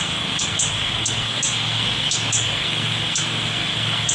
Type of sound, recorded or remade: remade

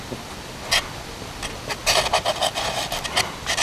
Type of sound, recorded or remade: recorded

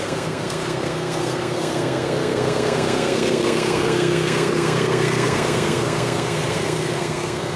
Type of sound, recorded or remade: remade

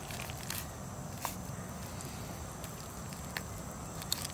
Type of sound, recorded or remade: recorded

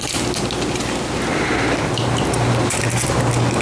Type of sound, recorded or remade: recorded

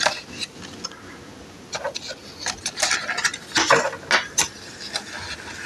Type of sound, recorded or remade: recorded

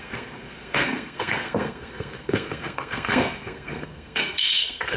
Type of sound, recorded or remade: remade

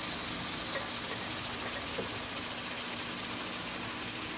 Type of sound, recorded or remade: recorded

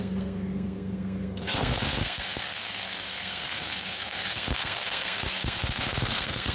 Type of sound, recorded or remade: remade